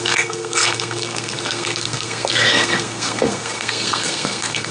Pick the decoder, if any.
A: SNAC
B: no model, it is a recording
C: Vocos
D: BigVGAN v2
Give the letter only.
A